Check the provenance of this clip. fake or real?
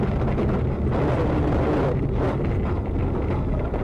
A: real